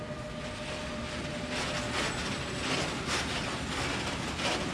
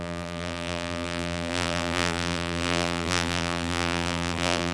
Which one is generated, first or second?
second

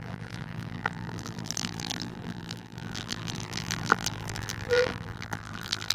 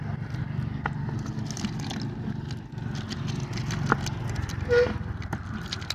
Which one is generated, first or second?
first